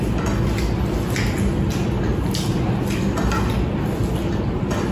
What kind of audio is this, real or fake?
real